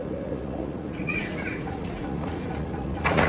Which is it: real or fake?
fake